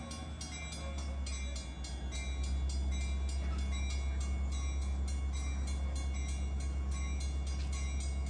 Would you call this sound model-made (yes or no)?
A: no